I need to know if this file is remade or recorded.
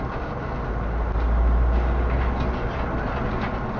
recorded